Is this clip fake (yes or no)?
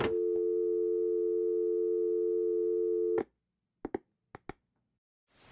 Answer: no